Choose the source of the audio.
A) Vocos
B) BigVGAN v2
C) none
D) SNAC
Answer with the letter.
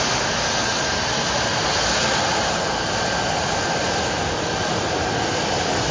C